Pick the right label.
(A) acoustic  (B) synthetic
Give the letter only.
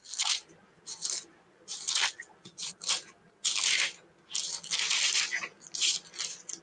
A